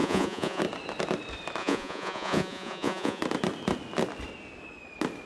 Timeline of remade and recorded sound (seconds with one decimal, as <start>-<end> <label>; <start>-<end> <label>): 0.0-0.6 remade; 0.6-1.6 recorded; 1.6-3.2 remade; 3.2-5.3 recorded